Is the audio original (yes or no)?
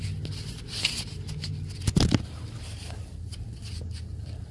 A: yes